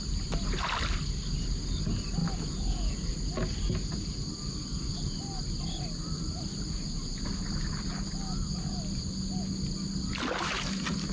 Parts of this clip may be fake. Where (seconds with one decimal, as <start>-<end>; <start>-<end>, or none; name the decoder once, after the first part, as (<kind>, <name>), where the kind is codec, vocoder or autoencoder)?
none